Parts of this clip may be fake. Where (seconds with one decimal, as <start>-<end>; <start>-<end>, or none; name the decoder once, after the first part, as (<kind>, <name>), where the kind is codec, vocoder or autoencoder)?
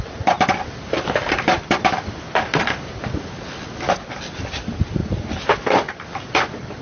none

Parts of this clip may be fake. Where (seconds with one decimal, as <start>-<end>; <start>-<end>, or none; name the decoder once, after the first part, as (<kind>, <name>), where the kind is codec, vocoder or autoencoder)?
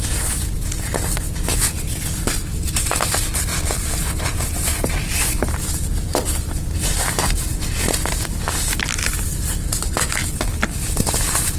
none